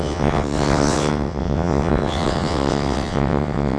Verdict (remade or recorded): remade